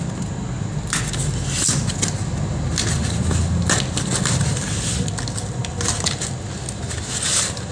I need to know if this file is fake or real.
real